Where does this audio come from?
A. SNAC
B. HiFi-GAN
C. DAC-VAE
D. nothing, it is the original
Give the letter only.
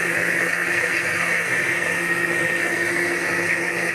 A